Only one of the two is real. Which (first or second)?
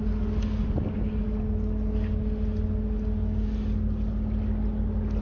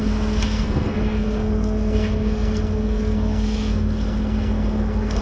first